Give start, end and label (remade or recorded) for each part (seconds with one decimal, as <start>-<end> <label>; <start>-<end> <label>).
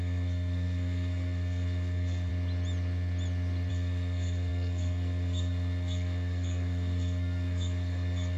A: 0.0-2.3 remade; 2.3-3.7 recorded; 3.7-8.4 remade